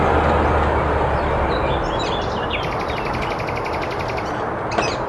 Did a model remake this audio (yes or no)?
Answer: no